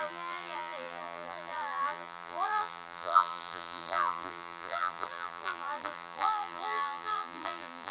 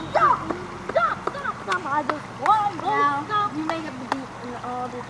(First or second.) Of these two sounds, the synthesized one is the first